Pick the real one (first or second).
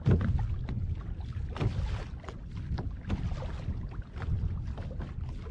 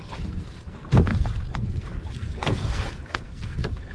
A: first